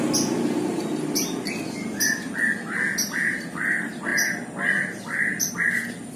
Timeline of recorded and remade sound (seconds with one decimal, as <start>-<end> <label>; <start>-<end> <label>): 0.0-6.2 recorded